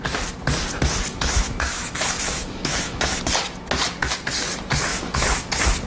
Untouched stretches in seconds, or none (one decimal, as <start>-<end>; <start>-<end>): 0.0-1.1; 3.2-4.9; 5.5-5.9